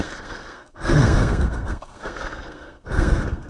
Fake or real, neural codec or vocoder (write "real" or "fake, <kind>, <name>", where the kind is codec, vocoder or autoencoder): fake, codec, SNAC